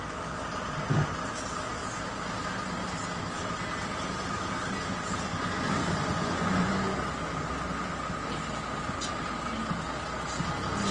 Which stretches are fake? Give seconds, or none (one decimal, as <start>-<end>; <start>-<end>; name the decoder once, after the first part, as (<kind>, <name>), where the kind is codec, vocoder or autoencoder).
5.3-6.7 (vocoder, Vocos)